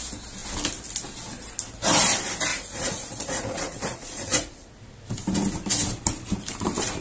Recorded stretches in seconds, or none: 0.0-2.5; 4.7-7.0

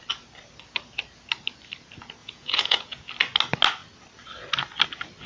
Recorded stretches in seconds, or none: 0.0-2.2; 3.1-5.3